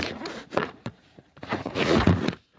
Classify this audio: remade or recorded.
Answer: remade